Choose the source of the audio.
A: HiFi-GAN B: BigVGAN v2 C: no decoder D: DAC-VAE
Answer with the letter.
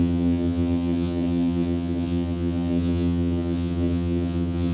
A